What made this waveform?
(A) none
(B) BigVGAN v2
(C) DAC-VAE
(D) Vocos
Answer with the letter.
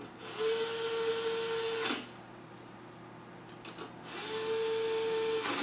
A